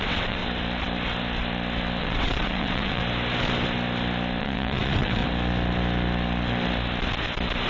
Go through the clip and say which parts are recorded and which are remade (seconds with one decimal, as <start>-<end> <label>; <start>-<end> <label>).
0.0-0.4 remade; 0.4-2.0 recorded; 2.0-3.0 remade; 3.0-4.4 recorded; 4.4-5.2 remade; 5.2-7.7 recorded